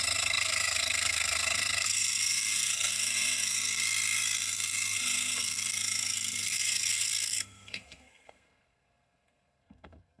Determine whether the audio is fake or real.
fake